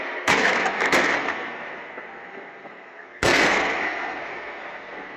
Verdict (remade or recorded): remade